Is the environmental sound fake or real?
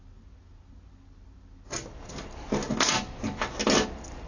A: real